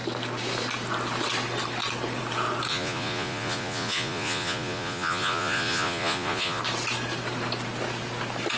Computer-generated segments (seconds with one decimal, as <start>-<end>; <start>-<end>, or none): 2.7-6.6

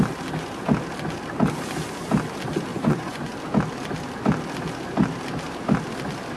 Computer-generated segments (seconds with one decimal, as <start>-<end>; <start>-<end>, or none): 2.7-3.3

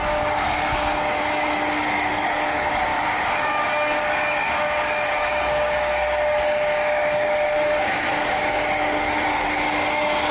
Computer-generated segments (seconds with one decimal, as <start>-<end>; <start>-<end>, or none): 0.0-10.3

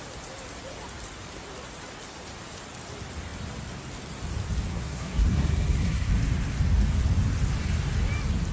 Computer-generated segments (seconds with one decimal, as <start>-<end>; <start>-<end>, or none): 4.7-6.1

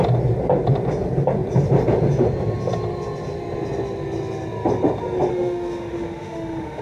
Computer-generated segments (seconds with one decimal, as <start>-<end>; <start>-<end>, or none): 5.3-6.8

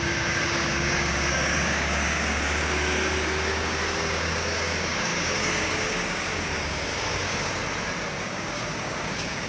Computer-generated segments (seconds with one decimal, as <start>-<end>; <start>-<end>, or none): 0.0-7.6; 8.2-9.5